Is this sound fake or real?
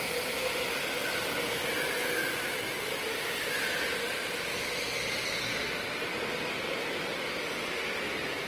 real